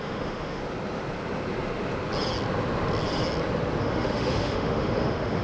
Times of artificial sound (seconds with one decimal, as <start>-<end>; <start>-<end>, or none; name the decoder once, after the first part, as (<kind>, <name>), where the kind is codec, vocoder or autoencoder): 0.0-0.6 (autoencoder, DAC-VAE); 3.8-5.4

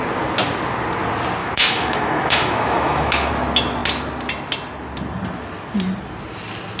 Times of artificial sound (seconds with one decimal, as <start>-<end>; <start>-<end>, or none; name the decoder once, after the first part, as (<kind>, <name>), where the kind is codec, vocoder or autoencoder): 1.4-3.3 (autoencoder, DAC-VAE)

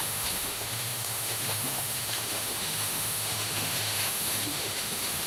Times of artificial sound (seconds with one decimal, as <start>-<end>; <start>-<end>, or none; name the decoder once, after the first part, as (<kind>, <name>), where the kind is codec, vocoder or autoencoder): 0.0-5.3 (autoencoder, DAC-VAE)

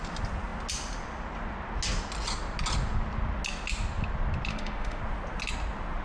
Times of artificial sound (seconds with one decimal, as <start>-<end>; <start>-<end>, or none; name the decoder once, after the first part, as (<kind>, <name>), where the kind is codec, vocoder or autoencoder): 4.5-5.0 (autoencoder, DAC-VAE)

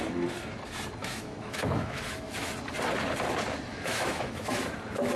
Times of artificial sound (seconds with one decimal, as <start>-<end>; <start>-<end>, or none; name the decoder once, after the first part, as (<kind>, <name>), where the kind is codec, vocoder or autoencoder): 1.0-2.5 (autoencoder, DAC-VAE); 3.7-4.6

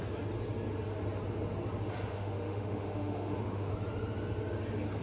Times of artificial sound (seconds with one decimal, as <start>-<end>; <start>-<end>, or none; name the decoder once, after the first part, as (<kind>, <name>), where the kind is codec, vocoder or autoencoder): 2.1-3.7 (autoencoder, DAC-VAE)

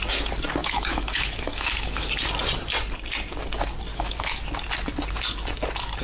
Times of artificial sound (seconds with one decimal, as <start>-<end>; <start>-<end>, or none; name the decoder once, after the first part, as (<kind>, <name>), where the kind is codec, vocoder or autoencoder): 0.6-2.1 (autoencoder, DAC-VAE); 3.9-4.4

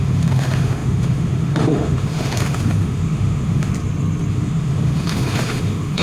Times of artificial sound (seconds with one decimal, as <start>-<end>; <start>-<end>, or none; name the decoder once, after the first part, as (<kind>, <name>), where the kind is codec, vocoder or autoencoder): 0.0-3.7 (autoencoder, DAC-VAE); 4.3-6.0